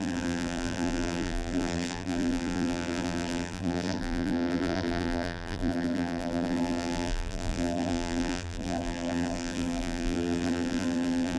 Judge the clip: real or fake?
fake